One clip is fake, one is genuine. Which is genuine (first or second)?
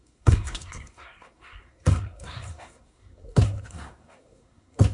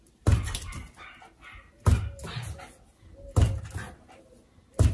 second